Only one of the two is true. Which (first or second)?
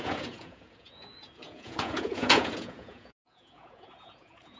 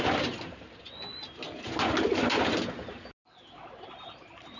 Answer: second